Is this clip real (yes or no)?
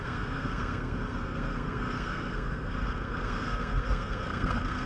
no